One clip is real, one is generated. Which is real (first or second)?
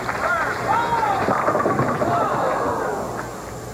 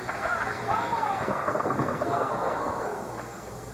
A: first